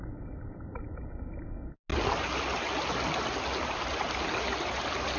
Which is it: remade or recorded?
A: recorded